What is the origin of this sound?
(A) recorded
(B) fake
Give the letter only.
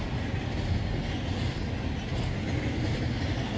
A